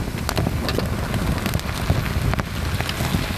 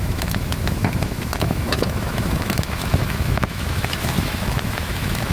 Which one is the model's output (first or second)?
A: second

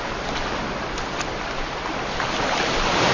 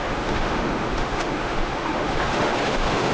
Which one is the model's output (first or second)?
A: second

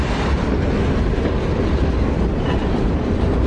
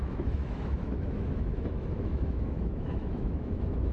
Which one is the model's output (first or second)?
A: second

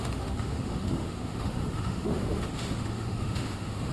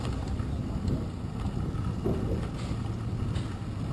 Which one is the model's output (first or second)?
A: first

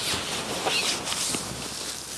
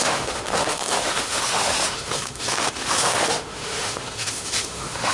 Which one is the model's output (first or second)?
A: second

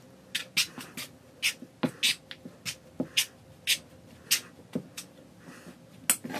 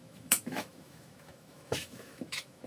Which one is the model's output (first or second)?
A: second